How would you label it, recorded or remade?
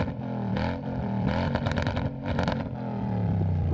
remade